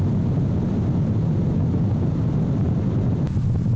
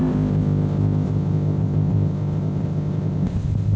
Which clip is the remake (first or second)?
second